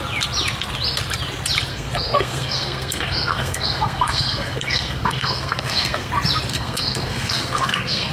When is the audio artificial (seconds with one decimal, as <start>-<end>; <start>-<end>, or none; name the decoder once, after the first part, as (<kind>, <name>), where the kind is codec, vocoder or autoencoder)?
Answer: 1.7-6.1 (codec, SNAC); 6.5-8.1

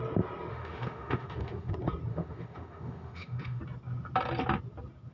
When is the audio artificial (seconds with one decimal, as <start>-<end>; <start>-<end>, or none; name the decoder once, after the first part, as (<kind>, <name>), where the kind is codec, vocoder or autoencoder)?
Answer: 0.5-1.7 (autoencoder, DAC-VAE); 2.1-3.6